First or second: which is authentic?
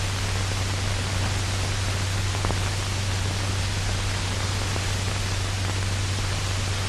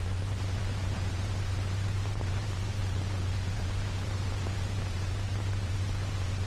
first